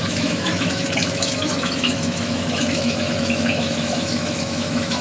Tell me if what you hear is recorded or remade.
remade